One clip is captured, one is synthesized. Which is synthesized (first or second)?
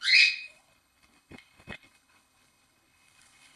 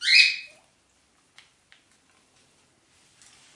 first